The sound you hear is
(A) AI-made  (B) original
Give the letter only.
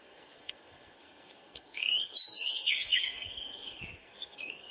A